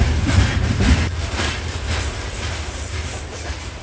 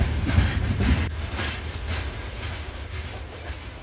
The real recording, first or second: second